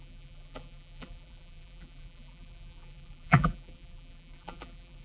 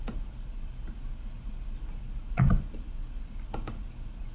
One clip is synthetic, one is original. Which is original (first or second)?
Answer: second